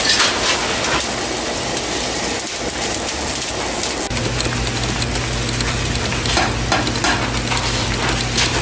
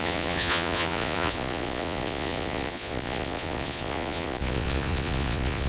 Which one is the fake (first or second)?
second